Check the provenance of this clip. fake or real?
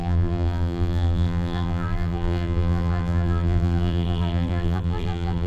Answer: fake